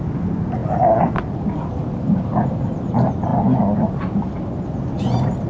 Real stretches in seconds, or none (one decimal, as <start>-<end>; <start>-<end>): 0.0-5.5